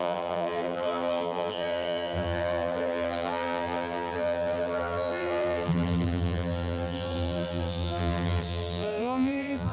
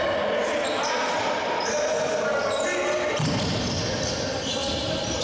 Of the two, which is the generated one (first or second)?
first